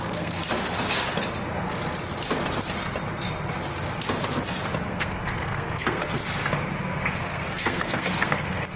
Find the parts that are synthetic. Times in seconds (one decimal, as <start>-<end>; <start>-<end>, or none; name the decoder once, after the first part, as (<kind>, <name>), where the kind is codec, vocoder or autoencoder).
0.0-0.4 (codec, SNAC); 4.8-6.2; 6.8-8.8